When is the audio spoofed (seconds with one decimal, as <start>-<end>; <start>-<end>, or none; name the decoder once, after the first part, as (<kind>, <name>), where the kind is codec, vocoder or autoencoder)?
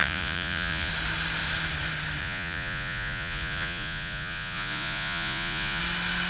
0.0-0.9 (vocoder, Vocos); 2.2-5.8